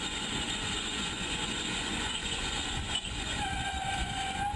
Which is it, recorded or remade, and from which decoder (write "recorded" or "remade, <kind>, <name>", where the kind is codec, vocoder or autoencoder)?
remade, vocoder, Vocos